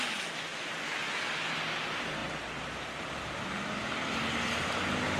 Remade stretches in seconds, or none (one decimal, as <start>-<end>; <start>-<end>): none